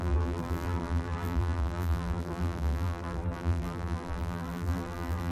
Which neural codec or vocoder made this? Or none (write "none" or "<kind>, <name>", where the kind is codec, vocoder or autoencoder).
vocoder, BigVGAN v2